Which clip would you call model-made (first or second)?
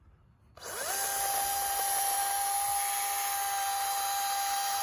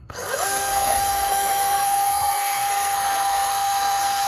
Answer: second